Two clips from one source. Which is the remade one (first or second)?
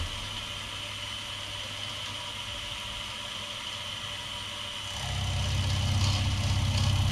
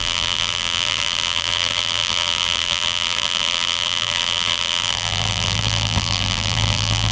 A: second